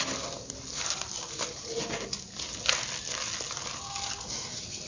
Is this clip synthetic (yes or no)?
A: no